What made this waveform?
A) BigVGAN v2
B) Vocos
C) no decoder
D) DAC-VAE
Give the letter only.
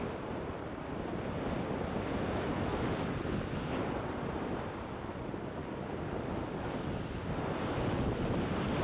C